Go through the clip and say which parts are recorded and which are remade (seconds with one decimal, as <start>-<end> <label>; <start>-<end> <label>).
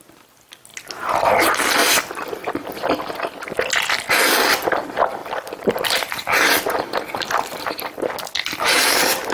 0.0-5.2 recorded; 5.2-7.7 remade; 7.7-9.3 recorded